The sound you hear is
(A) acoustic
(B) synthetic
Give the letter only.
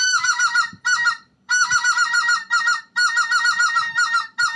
B